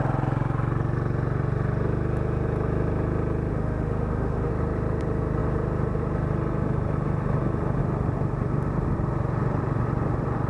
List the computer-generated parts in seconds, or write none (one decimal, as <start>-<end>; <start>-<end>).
3.5-4.5